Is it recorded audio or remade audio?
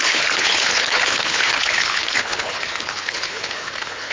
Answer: remade